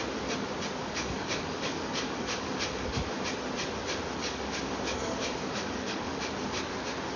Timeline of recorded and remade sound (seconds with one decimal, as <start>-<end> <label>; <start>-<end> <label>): 0.0-0.8 recorded; 0.8-3.0 remade; 3.0-4.2 recorded; 4.2-6.2 remade; 6.2-7.2 recorded